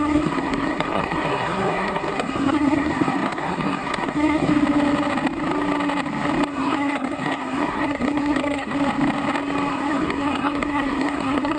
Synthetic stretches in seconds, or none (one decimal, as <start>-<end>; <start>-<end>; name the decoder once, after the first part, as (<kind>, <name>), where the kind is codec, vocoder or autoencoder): 0.0-4.5 (codec, SNAC); 6.5-8.7; 9.7-11.6